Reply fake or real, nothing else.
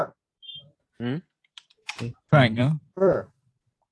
fake